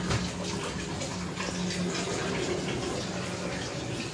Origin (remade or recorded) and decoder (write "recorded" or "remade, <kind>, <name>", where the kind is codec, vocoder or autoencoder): recorded